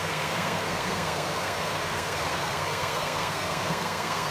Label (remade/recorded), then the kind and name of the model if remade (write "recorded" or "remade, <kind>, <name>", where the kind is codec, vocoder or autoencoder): remade, codec, SNAC